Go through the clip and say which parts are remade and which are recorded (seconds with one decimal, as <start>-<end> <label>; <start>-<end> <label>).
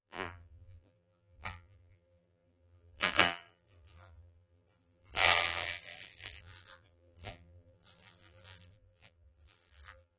0.0-10.2 remade